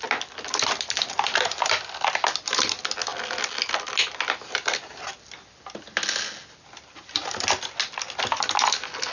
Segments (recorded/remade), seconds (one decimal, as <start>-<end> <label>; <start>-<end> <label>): 0.0-9.1 recorded